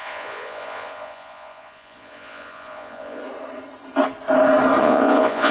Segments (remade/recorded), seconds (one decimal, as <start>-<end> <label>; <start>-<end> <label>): 0.0-3.2 remade; 3.2-4.8 recorded; 4.8-5.5 remade